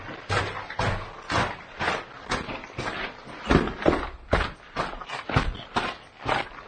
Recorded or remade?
recorded